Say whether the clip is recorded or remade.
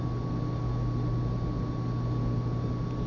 recorded